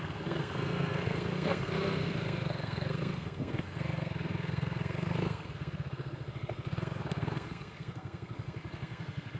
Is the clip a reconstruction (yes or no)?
yes